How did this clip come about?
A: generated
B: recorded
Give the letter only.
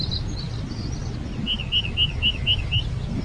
B